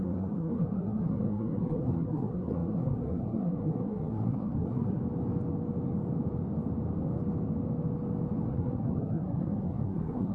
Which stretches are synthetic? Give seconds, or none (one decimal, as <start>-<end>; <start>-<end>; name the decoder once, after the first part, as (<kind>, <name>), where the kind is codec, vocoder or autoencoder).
0.0-5.0 (codec, SNAC); 8.5-10.3